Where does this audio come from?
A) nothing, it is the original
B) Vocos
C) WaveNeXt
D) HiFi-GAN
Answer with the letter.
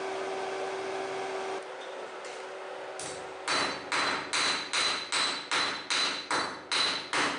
A